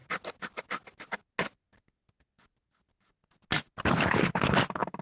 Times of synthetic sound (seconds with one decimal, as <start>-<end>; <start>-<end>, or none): none